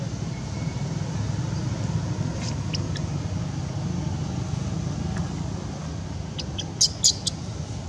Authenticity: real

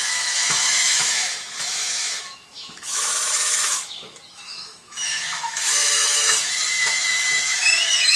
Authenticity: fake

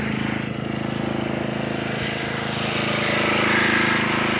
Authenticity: real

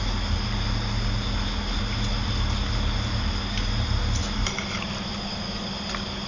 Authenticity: real